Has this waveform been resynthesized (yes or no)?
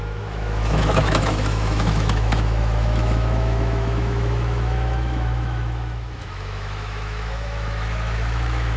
yes